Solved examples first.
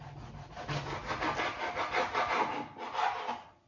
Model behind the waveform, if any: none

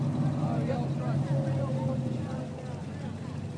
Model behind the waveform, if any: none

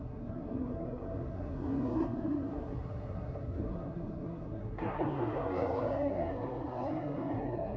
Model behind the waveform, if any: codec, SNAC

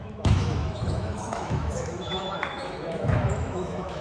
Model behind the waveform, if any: autoencoder, DAC-VAE